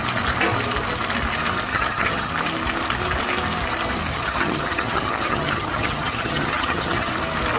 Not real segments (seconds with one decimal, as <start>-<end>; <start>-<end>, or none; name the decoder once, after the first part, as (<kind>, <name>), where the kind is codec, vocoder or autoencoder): 1.7-2.3 (vocoder, HiFi-GAN); 4.1-7.1